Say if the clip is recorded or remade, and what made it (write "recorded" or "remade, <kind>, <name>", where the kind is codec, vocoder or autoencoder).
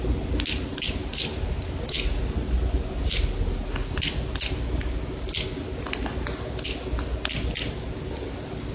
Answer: recorded